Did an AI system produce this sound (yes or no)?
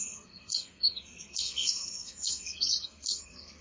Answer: yes